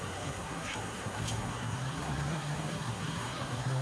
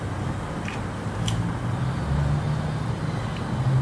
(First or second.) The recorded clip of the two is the second